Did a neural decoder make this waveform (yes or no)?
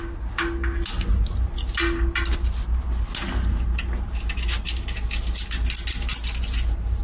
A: no